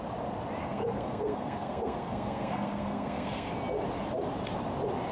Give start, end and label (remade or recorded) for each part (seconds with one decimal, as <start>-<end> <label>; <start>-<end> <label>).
0.0-0.6 recorded; 0.6-3.5 remade; 3.5-5.1 recorded